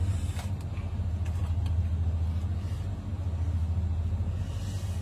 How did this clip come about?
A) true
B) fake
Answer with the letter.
A